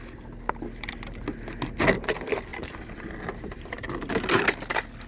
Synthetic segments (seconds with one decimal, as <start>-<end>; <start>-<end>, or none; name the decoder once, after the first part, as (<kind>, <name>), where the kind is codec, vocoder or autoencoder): 2.5-4.5 (vocoder, BigVGAN v2)